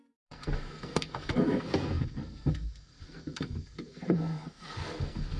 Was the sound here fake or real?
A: fake